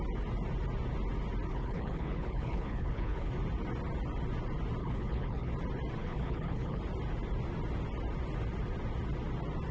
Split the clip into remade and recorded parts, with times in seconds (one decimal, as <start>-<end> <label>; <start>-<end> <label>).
0.0-1.5 recorded; 1.5-3.3 remade; 3.3-4.8 recorded; 4.8-5.5 remade; 5.5-6.0 recorded; 6.0-6.8 remade; 6.8-9.7 recorded